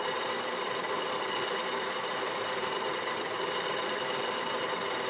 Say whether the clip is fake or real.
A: real